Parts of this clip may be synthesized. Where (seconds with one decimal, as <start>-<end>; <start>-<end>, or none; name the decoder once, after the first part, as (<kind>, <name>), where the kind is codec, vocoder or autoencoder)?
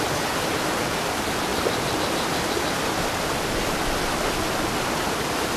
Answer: none